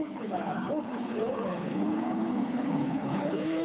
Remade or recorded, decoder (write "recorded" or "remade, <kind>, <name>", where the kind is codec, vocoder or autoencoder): remade, codec, HILCodec